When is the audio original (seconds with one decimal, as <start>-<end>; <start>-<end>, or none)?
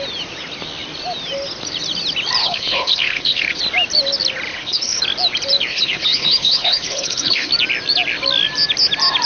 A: 0.0-2.4; 3.6-4.5; 5.0-5.7; 7.5-9.3